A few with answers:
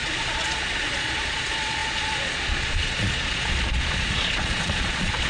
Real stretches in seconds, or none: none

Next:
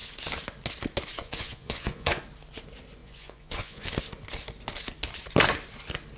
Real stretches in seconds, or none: 0.0-1.2; 2.2-3.0; 3.8-6.2

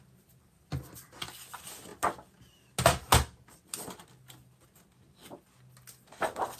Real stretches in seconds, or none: 0.0-6.6

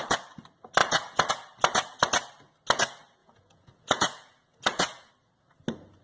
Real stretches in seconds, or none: 0.0-0.8; 1.3-3.2; 5.1-6.0